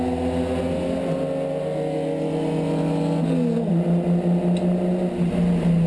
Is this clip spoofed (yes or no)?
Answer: no